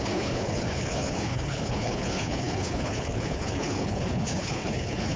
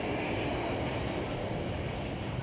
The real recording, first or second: second